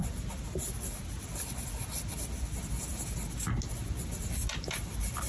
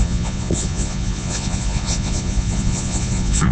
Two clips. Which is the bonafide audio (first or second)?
first